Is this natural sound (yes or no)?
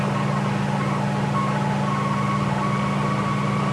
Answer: yes